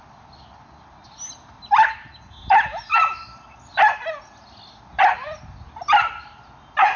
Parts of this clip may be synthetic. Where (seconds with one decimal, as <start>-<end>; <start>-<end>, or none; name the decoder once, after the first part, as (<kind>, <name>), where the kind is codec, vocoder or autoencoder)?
none